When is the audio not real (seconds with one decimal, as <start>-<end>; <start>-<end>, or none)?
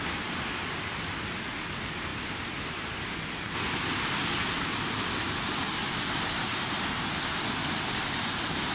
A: none